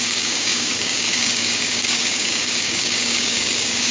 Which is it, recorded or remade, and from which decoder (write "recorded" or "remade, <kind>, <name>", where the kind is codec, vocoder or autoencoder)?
remade, codec, DAC